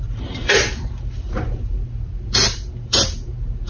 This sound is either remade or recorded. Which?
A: remade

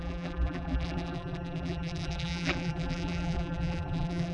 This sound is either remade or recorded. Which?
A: remade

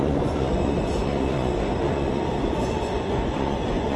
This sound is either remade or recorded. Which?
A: remade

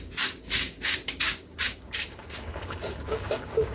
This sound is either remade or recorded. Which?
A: remade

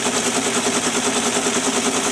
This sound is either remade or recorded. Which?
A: recorded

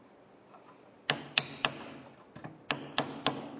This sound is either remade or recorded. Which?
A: recorded